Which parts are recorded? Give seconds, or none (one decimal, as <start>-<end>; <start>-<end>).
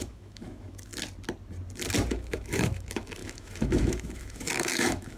0.9-2.1